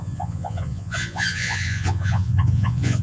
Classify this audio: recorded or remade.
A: remade